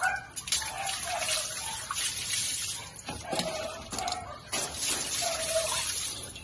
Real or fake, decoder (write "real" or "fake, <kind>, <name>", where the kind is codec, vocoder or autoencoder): fake, vocoder, BigVGAN v2